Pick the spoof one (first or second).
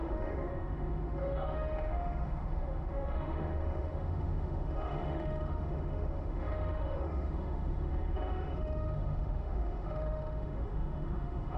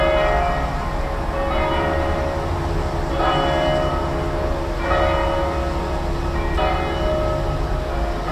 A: first